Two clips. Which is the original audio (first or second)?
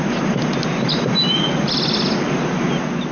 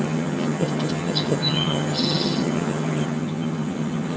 first